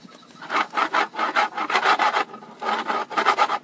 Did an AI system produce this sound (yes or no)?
no